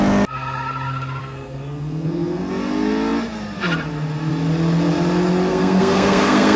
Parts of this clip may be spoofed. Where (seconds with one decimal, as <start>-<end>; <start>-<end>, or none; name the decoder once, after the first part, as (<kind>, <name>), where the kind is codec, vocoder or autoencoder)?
1.2-2.4 (codec, SNAC); 5.5-6.6